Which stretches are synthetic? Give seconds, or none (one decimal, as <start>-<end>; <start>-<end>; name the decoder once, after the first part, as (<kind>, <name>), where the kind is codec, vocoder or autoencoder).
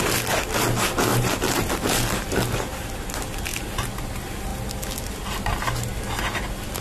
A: 1.1-1.7 (vocoder, BigVGAN v2)